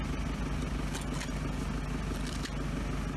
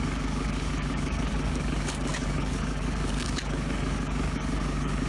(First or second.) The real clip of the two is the first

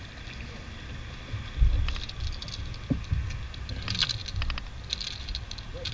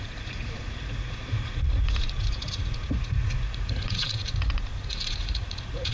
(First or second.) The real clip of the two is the first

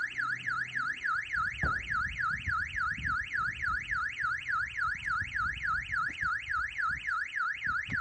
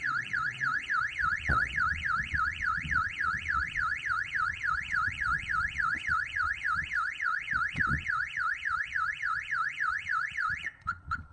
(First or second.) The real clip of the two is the first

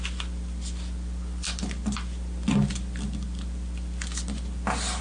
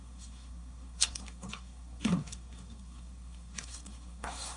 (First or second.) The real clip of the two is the first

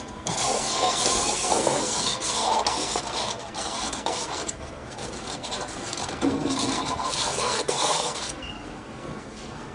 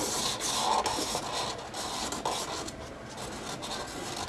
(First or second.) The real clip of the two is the second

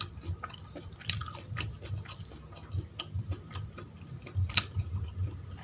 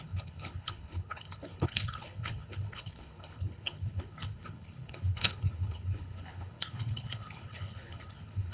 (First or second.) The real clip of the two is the first